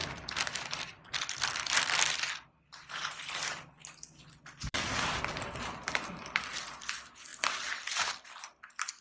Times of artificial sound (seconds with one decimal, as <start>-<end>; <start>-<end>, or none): 0.0-3.8; 4.7-7.3; 7.8-9.0